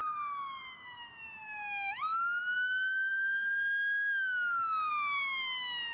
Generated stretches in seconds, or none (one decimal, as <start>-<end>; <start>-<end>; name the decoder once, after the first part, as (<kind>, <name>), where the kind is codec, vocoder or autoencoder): none